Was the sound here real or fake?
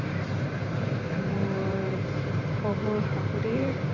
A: fake